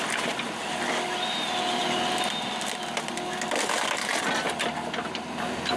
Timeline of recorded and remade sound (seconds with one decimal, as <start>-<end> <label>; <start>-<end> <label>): 0.0-5.8 recorded